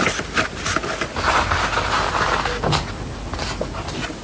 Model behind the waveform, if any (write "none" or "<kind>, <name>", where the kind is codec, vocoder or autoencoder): none